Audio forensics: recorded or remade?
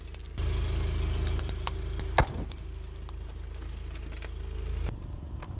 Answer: recorded